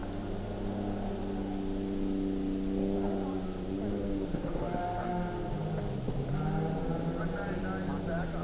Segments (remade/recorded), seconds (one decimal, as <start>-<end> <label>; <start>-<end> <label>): 0.0-3.9 recorded; 3.9-4.6 remade; 4.6-8.4 recorded

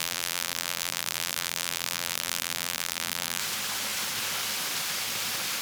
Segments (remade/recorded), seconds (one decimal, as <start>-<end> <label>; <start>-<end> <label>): 0.0-3.4 remade; 3.4-5.6 recorded

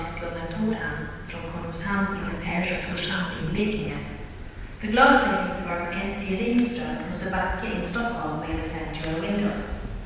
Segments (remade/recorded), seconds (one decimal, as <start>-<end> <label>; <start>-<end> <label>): 0.0-2.2 recorded; 2.2-3.9 remade; 3.9-10.1 recorded

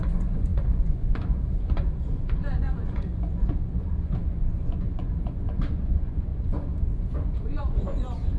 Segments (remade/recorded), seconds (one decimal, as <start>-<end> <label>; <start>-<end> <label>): 0.0-8.4 remade

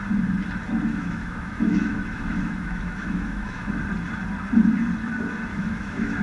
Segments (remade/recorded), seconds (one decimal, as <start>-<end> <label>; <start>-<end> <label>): 0.0-0.9 recorded; 0.9-3.7 remade; 3.7-5.5 recorded; 5.5-6.2 remade